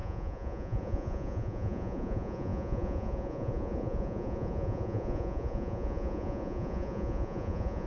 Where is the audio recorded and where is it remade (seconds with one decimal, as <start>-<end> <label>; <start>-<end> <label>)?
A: 0.0-7.9 remade